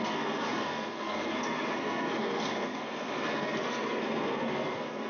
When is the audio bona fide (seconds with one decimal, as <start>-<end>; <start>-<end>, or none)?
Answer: none